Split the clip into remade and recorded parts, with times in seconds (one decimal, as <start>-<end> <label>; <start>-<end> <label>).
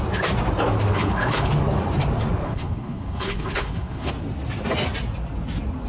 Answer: 0.0-0.9 recorded; 0.9-1.5 remade; 1.5-2.4 recorded; 2.4-4.1 remade; 4.1-5.9 recorded